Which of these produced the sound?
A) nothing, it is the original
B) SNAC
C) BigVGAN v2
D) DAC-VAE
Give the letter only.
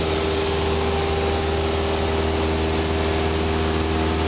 A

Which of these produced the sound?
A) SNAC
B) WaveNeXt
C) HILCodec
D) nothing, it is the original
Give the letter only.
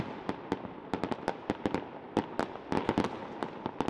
D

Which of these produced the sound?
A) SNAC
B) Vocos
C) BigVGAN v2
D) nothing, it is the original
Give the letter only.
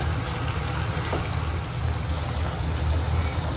D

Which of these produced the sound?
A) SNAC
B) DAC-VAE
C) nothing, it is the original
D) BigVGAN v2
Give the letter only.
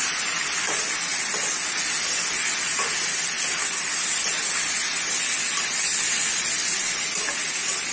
C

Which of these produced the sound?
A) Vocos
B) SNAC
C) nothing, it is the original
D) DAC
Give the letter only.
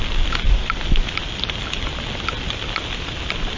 C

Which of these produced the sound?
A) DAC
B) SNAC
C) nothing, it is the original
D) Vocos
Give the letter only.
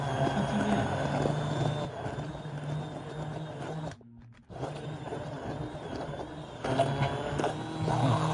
C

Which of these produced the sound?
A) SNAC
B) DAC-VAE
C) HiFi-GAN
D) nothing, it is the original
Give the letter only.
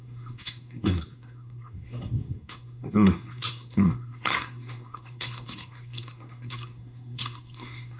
A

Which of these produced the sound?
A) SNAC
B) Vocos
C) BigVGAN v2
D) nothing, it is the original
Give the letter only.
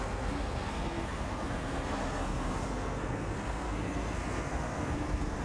A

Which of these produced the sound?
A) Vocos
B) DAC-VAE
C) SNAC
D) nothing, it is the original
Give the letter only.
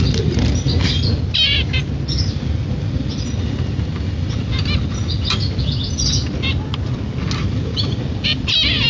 D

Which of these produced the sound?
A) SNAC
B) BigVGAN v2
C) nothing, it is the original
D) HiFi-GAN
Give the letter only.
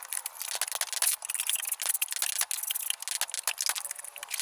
C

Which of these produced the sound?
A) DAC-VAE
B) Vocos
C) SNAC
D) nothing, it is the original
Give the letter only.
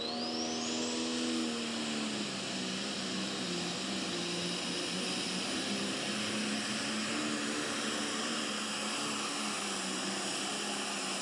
D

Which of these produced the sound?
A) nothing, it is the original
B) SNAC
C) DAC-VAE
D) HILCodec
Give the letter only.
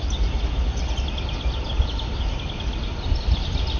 A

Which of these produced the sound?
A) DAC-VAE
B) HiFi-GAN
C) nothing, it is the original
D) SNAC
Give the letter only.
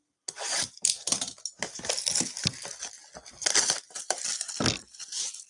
C